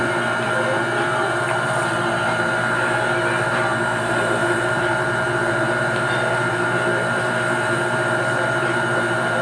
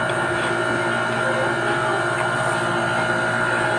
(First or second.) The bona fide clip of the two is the second